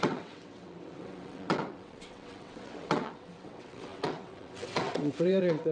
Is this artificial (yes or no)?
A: yes